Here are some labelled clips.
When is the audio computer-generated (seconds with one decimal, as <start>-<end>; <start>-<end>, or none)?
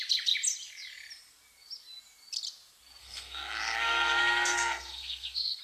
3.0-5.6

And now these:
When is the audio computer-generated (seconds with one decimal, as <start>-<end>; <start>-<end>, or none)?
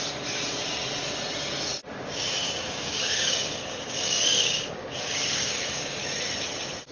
1.9-6.0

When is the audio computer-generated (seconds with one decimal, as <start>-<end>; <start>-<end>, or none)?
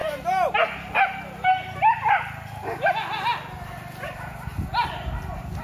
none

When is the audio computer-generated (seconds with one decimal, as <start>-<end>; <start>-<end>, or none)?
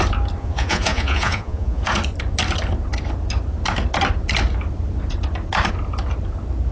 0.4-1.8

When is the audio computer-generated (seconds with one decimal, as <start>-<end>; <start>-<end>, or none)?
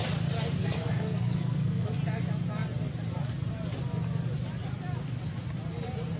0.6-1.9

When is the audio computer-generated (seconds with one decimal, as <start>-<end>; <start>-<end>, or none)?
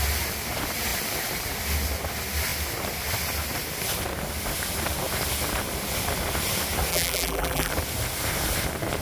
6.9-7.7